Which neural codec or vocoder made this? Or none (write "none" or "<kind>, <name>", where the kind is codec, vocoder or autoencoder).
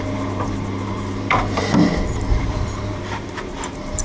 vocoder, BigVGAN v2